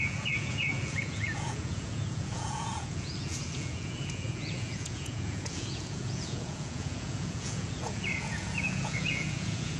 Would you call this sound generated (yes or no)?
yes